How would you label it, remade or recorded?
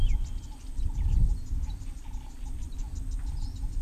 recorded